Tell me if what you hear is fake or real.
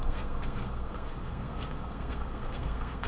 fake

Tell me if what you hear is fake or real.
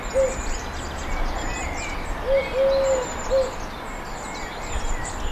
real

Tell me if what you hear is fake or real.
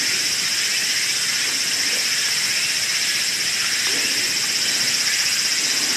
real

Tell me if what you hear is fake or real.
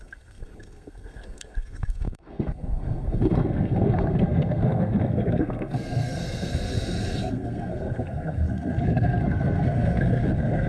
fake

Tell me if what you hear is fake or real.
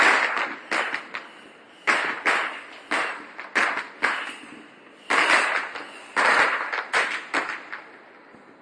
real